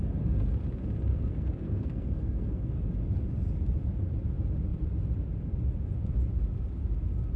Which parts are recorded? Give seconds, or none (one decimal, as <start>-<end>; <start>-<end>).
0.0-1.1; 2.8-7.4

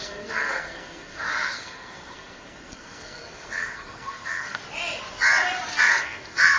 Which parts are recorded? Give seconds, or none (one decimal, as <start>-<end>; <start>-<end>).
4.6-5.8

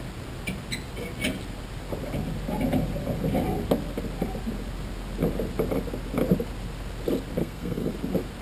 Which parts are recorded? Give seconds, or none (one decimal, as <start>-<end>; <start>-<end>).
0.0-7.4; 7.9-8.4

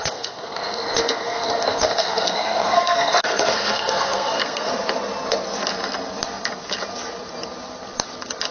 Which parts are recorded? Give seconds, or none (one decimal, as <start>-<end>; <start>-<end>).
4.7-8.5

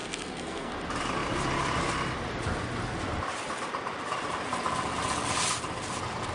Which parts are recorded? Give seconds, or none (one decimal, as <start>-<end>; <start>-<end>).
0.7-6.3

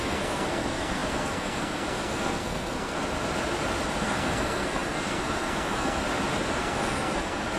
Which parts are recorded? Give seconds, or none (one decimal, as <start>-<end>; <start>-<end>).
3.0-4.0; 6.0-6.5